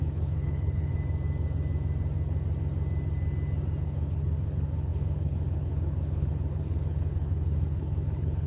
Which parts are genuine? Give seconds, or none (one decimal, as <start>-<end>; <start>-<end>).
0.9-3.8

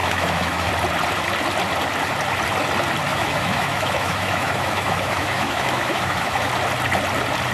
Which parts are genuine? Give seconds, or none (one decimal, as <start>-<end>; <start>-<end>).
0.7-3.1; 6.5-7.5